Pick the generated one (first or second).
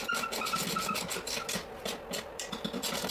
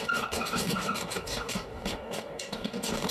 second